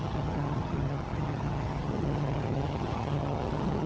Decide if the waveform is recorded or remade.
remade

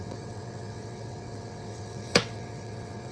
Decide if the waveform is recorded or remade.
remade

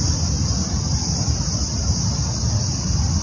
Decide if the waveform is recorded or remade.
recorded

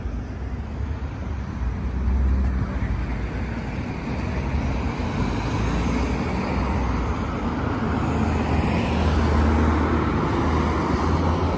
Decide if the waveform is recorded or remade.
recorded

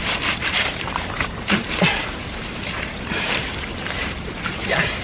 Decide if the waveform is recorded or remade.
remade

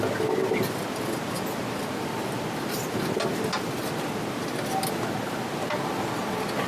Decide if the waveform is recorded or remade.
recorded